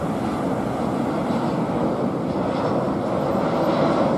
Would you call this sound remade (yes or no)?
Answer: no